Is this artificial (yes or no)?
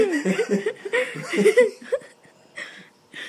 no